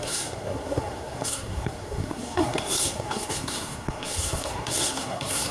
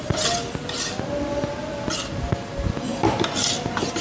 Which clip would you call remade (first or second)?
first